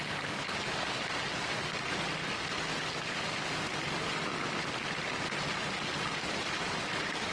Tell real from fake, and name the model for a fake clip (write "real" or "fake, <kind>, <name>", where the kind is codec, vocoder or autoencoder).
real